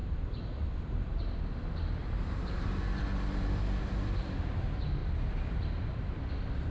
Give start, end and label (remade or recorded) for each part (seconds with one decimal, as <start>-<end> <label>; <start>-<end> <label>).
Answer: 0.0-0.6 remade; 0.6-2.0 recorded; 2.0-2.8 remade; 2.8-5.0 recorded; 5.0-6.3 remade; 6.3-6.7 recorded